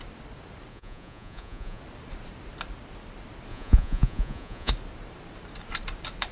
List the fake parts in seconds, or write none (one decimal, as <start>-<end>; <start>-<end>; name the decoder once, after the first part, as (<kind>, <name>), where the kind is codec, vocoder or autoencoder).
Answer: 0.7-1.8 (vocoder, Vocos); 3.5-4.7